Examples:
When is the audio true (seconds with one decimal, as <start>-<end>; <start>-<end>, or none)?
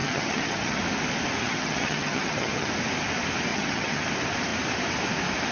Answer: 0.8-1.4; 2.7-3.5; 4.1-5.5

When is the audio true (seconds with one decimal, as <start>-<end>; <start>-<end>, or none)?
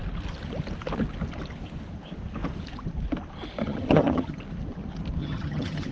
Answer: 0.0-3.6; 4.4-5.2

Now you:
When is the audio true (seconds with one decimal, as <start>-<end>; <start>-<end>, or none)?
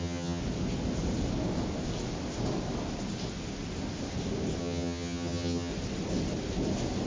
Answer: 0.4-4.6; 5.7-7.1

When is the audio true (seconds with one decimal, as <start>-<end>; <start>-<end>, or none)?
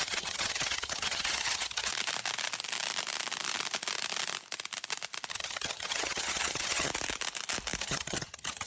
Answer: 1.9-5.3; 6.9-7.8